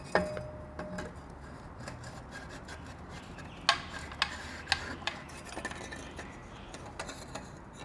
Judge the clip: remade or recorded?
recorded